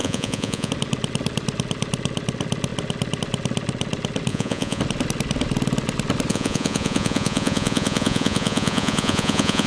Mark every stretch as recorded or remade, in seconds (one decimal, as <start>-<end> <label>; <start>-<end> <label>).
0.0-0.7 remade; 0.7-4.3 recorded; 4.3-4.8 remade; 4.8-6.3 recorded; 6.3-9.7 remade